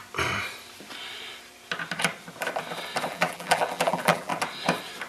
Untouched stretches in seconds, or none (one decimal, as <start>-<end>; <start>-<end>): 0.0-3.1; 4.3-5.1